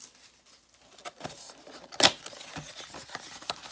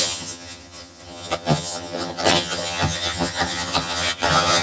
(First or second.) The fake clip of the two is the second